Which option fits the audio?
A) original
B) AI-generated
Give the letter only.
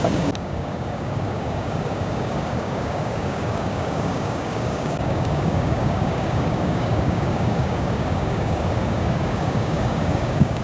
B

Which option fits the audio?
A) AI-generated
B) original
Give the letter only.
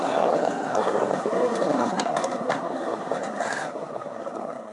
A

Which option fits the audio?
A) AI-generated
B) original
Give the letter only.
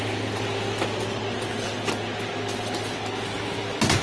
B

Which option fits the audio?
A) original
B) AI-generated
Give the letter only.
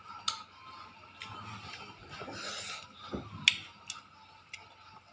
A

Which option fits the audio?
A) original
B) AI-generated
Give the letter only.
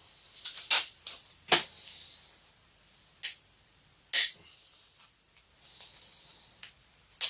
A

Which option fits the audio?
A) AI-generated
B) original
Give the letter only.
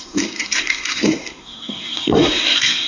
A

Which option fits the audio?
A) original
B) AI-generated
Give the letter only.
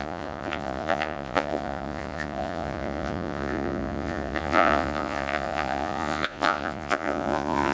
B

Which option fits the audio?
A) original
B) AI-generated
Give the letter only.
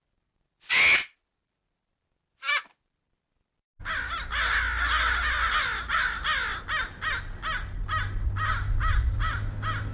A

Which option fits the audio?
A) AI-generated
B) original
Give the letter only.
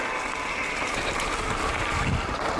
B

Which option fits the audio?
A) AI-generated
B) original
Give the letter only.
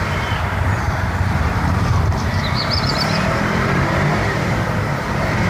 A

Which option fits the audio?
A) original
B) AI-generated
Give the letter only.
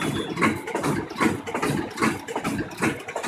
A